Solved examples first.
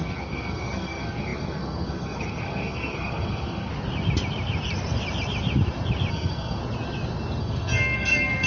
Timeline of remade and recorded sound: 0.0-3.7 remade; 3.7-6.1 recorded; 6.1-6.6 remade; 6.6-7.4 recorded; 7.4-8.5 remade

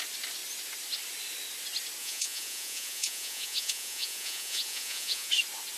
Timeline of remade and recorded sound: 0.0-2.0 recorded; 2.0-5.3 remade; 5.3-5.8 recorded

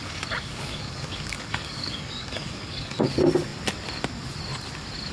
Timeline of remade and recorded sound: 0.0-3.1 remade; 3.1-5.1 recorded